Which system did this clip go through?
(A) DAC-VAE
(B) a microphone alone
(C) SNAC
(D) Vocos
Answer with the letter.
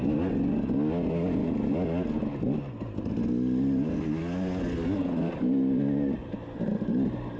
B